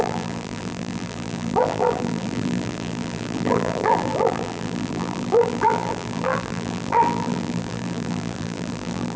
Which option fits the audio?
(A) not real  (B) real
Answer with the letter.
A